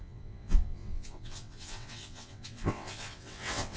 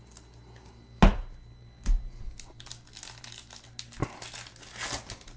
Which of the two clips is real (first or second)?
second